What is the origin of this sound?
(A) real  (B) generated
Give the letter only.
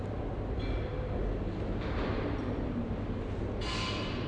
A